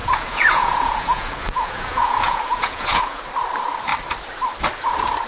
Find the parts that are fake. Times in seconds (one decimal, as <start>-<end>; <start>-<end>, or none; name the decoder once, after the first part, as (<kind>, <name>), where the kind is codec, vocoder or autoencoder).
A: 0.0-3.2 (vocoder, Vocos)